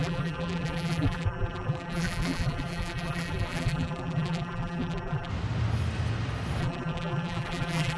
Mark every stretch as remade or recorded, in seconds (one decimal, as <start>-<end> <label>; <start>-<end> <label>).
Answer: 0.0-5.3 remade; 5.3-6.6 recorded; 6.6-8.0 remade